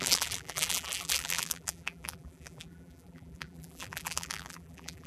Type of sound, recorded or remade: remade